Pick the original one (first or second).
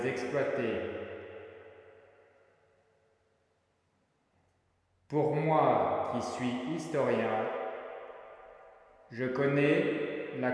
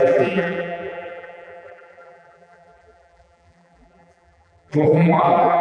first